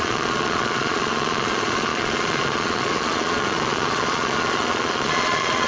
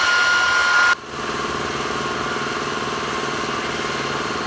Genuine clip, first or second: second